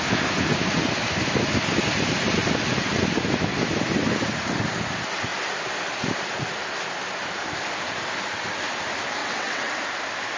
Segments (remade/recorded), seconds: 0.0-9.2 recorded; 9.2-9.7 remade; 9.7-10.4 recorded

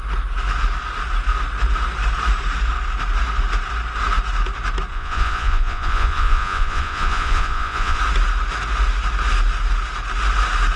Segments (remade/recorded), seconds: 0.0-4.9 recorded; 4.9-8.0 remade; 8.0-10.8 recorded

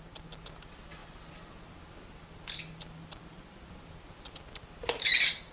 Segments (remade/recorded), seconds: 0.0-5.5 recorded